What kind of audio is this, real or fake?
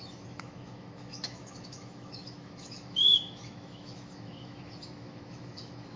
fake